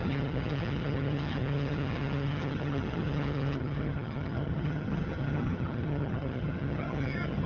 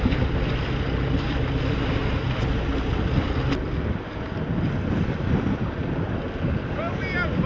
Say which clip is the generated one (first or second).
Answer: first